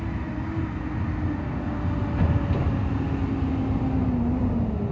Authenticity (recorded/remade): recorded